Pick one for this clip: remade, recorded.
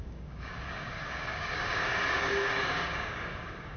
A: remade